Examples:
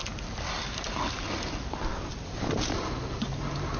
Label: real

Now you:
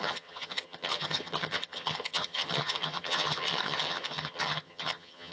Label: fake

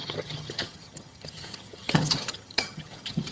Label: fake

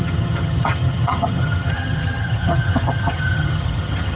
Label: fake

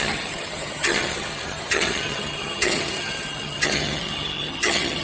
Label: fake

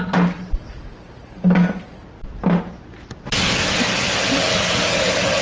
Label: real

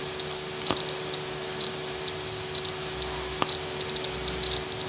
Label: real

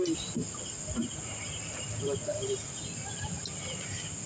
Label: real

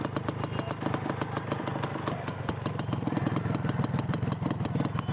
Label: real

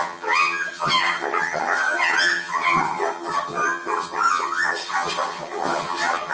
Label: fake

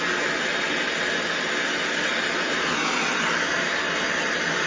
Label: real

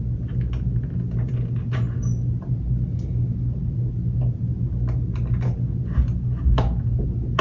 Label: real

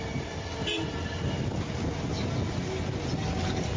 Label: real